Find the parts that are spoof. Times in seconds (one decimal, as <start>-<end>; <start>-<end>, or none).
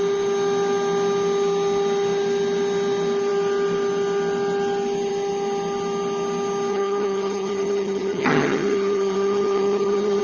6.7-10.2